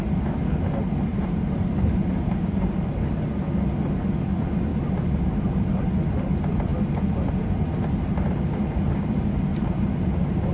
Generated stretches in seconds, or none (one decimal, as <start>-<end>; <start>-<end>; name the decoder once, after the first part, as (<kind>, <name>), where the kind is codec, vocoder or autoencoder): 1.1-3.3 (vocoder, BigVGAN v2); 4.7-5.8; 9.5-10.5